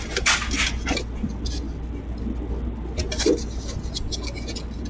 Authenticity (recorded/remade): recorded